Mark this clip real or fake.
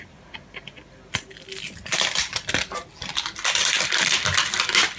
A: real